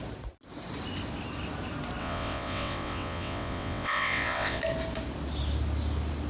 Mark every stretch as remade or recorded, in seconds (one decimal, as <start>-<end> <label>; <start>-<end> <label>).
0.0-2.0 recorded; 2.0-4.6 remade; 4.6-6.3 recorded